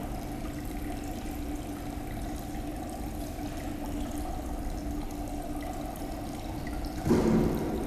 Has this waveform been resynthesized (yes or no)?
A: no